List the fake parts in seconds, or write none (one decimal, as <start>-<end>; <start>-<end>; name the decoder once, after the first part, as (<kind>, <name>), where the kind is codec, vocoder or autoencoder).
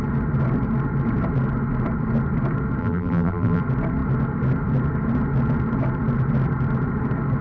2.8-3.6 (vocoder, BigVGAN v2)